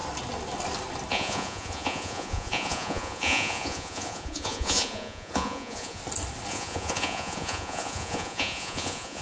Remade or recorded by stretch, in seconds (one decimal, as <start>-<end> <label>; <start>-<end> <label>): 0.0-1.1 recorded; 1.1-6.0 remade; 6.0-6.5 recorded; 6.5-9.2 remade